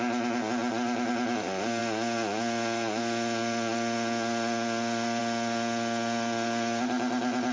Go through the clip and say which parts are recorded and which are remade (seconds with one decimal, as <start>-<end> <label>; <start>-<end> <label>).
0.0-7.5 recorded

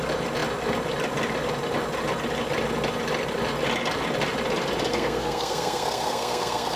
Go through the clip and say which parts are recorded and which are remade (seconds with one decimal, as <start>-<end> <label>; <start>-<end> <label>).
0.0-4.9 recorded; 4.9-6.8 remade